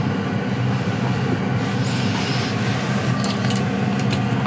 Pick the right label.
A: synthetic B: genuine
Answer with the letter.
B